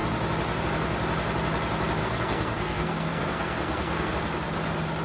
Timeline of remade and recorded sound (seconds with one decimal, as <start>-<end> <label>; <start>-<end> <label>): 0.0-2.0 recorded; 2.0-4.1 remade; 4.1-5.0 recorded